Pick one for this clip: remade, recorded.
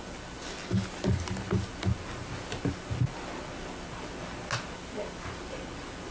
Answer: recorded